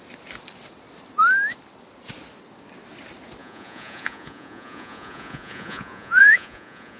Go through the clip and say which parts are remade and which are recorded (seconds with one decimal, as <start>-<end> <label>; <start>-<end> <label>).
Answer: 0.0-3.4 recorded; 3.4-7.0 remade